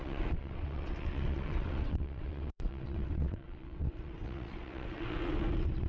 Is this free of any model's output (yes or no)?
no